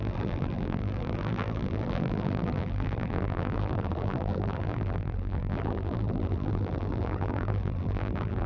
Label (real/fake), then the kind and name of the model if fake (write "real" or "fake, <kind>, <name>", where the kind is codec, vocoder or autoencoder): fake, vocoder, BigVGAN v2